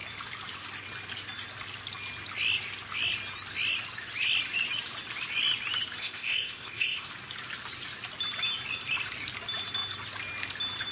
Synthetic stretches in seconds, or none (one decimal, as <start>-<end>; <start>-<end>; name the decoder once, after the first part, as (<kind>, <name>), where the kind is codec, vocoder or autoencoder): 6.0-7.1 (codec, ZipCodec)